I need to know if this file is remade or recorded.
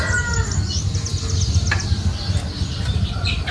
recorded